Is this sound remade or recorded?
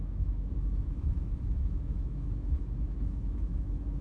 remade